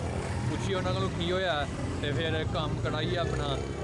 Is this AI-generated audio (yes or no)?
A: no